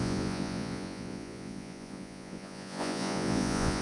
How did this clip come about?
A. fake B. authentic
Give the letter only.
A